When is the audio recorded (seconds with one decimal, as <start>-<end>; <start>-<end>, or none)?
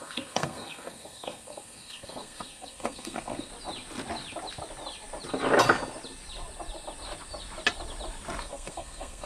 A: 3.5-8.4